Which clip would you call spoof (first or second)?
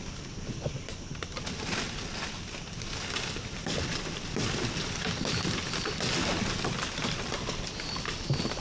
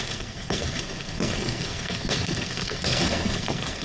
second